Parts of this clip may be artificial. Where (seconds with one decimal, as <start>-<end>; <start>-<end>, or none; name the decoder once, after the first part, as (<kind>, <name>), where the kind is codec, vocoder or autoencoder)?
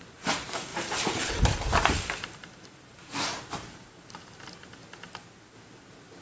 0.7-4.4 (vocoder, BigVGAN v2)